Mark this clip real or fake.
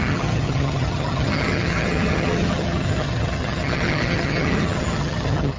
fake